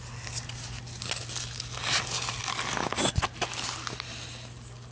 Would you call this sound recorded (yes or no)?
yes